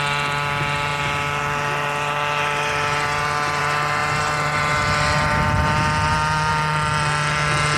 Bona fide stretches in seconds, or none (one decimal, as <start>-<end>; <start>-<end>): 0.0-7.8